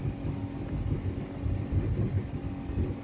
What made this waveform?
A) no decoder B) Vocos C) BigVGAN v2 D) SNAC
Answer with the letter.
A